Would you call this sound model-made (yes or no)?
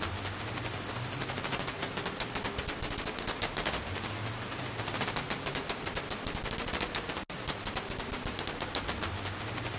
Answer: no